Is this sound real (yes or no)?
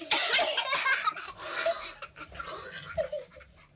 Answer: yes